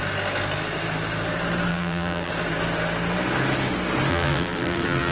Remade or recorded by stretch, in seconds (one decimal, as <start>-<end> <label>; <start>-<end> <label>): 0.0-1.7 recorded; 1.7-2.3 remade; 2.3-4.1 recorded; 4.1-5.1 remade